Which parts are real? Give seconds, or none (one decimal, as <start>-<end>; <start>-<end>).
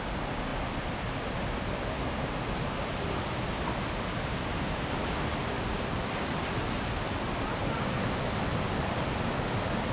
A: 0.0-9.9